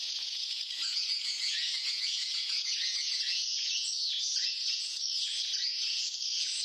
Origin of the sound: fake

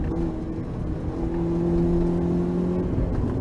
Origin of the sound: real